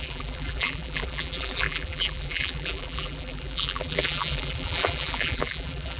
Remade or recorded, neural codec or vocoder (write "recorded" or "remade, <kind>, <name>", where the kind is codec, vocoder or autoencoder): remade, vocoder, BigVGAN v2